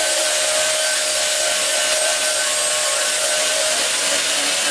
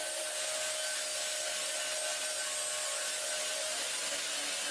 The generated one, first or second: first